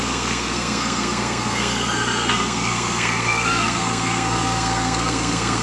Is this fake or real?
fake